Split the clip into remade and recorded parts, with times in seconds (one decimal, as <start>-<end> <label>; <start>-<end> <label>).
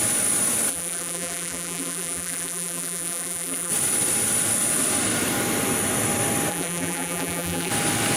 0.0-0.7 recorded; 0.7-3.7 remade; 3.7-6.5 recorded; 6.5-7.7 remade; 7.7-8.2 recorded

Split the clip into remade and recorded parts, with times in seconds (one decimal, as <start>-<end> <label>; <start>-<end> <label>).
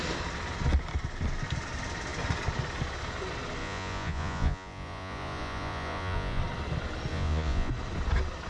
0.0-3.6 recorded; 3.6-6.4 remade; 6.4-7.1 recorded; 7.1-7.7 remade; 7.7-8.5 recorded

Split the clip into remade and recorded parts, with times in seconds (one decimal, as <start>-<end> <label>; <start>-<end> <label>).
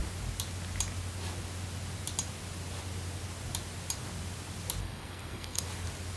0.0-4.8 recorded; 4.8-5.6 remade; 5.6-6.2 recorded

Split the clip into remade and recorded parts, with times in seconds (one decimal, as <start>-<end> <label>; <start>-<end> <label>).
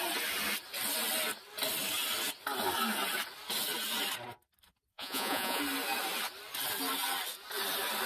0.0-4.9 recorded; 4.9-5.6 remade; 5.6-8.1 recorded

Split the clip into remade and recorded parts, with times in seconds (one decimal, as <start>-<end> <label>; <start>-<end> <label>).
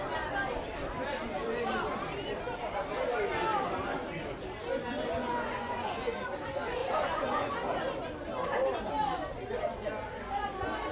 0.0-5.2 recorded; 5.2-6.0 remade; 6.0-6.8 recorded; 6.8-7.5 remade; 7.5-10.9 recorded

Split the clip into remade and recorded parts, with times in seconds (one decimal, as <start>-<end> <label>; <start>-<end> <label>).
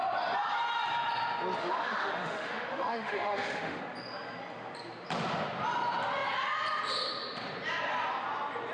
0.0-1.6 recorded; 1.6-3.8 remade; 3.8-8.7 recorded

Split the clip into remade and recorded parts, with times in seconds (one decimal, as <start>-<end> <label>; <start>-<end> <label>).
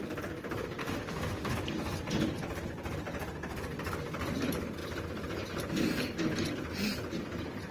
0.0-0.8 recorded; 0.8-1.5 remade; 1.5-7.7 recorded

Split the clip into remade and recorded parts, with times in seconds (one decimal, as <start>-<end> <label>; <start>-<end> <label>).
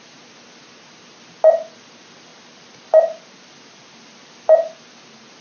0.0-5.4 recorded